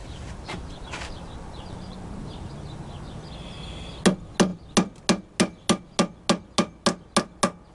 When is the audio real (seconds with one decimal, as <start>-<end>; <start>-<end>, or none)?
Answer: 3.3-7.7